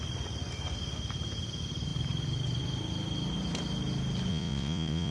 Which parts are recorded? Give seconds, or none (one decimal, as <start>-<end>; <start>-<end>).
0.0-4.3

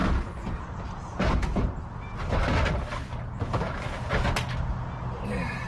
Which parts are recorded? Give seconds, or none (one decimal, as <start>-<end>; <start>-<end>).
0.8-5.7

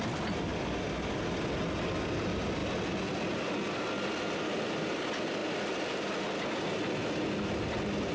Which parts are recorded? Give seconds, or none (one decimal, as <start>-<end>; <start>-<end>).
0.0-8.1

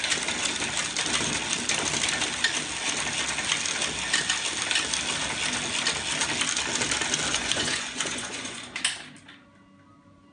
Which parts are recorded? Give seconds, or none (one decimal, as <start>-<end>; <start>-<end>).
0.0-7.3; 8.8-10.3

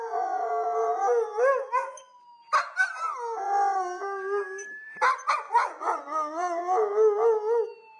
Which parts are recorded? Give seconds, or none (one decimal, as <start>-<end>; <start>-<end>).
0.5-5.3; 6.6-8.0

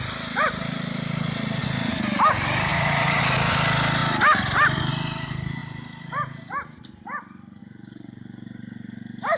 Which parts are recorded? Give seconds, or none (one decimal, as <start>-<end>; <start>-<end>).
0.0-2.7; 3.2-9.4